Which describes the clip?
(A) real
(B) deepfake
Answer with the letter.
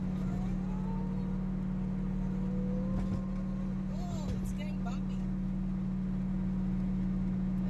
A